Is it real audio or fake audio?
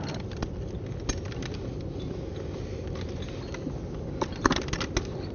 real